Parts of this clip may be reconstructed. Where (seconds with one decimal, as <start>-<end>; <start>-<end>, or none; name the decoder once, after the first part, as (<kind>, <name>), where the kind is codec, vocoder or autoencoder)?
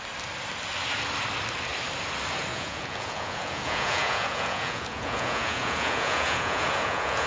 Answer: 2.5-7.3 (vocoder, Vocos)